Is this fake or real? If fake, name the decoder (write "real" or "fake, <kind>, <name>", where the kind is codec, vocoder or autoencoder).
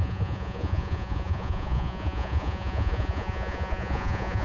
fake, vocoder, Vocos